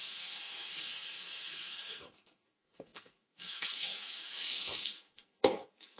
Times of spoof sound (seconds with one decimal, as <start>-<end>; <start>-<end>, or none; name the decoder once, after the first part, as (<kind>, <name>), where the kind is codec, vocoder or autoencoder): 0.0-6.0 (codec, SNAC)